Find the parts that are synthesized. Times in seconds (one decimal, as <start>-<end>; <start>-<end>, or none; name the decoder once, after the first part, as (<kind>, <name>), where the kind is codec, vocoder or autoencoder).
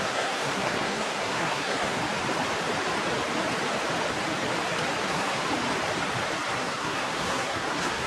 0.0-2.0 (codec, SNAC); 5.0-5.4; 6.5-8.1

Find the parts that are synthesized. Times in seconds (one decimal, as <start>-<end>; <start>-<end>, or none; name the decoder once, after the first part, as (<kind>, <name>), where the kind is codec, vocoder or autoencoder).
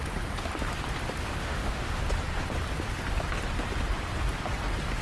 1.2-2.0 (autoencoder, DAC-VAE)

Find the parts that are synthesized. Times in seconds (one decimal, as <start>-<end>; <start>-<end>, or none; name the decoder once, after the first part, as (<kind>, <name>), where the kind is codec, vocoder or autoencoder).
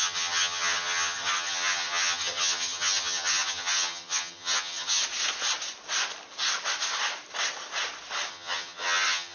0.0-5.0 (vocoder, HiFi-GAN); 8.3-9.3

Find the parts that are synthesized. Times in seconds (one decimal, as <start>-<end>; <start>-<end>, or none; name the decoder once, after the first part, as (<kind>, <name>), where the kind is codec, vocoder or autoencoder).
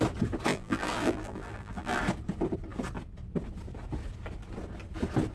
0.5-2.0 (vocoder, BigVGAN v2)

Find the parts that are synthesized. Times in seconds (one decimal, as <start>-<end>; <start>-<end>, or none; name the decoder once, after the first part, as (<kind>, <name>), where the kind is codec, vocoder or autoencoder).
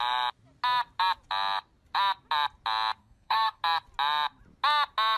3.0-3.6 (codec, SNAC)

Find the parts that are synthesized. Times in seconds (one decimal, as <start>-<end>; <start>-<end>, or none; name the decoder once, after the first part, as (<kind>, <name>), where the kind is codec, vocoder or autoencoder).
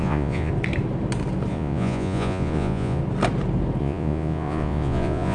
0.0-0.5 (vocoder, Vocos); 1.5-3.0; 3.8-5.3